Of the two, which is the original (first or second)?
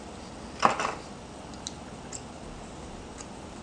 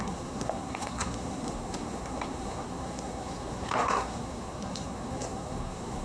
first